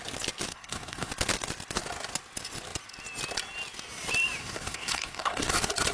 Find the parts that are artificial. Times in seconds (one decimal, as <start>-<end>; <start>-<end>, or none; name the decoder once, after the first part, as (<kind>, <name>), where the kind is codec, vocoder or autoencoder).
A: 0.5-1.1 (codec, SNAC); 4.4-5.5

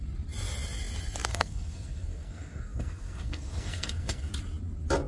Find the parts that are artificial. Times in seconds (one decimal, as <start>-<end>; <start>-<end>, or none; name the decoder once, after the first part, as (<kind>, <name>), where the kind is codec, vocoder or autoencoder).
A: 1.3-4.3 (codec, SNAC)

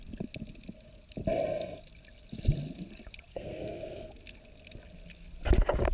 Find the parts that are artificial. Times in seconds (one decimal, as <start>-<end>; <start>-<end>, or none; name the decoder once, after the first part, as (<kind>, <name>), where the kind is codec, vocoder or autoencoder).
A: 3.3-4.1 (codec, SNAC)